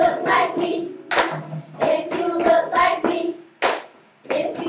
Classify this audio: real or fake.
real